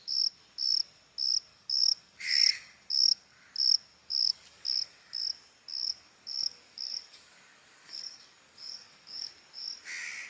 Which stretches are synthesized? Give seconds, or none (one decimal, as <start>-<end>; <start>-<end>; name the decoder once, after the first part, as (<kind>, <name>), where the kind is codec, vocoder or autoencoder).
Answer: 1.5-3.5 (codec, DAC); 4.0-5.2; 5.7-9.3